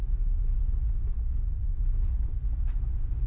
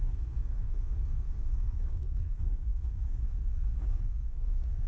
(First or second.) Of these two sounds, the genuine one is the first